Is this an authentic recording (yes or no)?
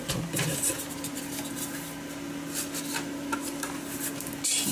yes